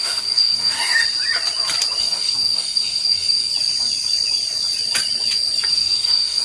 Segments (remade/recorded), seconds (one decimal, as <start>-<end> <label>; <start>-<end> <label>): 0.0-1.0 remade; 1.0-2.0 recorded; 2.0-3.5 remade; 3.5-5.7 recorded; 5.7-6.4 remade